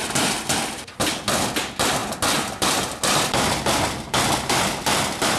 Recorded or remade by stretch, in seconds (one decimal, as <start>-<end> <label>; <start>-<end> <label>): 0.0-5.4 recorded